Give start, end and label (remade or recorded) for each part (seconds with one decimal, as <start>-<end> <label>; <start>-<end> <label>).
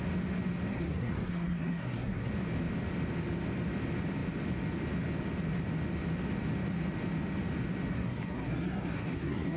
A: 0.0-0.7 recorded; 0.7-2.3 remade; 2.3-7.9 recorded; 7.9-9.6 remade